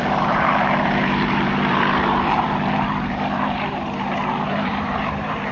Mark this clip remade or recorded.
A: remade